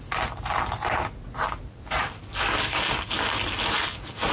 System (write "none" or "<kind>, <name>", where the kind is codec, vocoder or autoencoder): none